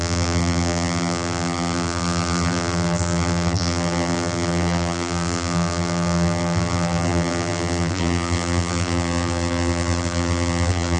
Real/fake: fake